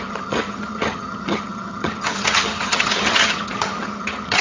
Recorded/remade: remade